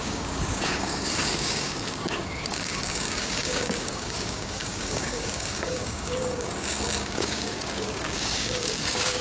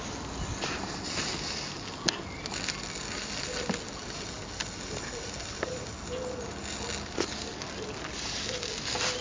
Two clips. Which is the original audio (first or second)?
second